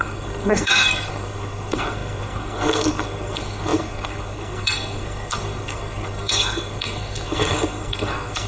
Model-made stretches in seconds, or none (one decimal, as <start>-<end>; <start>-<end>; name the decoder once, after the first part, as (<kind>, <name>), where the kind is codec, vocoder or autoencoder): 0.0-8.5 (codec, SNAC)